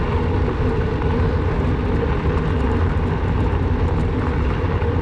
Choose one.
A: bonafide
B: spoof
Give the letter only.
A